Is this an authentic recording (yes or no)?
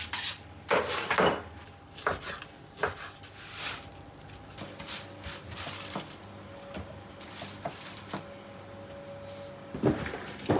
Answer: yes